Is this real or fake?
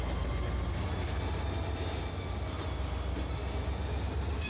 real